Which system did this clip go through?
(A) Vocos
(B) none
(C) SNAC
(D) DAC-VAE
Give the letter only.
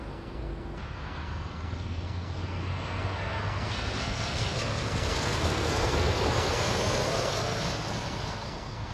C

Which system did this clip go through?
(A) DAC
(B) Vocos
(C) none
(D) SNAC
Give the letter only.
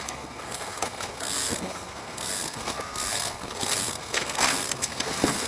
D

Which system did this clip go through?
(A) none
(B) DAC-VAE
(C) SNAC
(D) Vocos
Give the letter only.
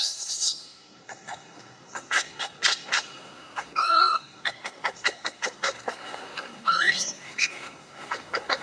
C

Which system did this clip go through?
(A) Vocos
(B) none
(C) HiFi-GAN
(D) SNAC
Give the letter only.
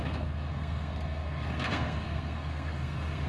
D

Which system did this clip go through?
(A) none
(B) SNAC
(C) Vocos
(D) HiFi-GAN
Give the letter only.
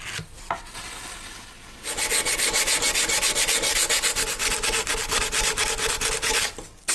A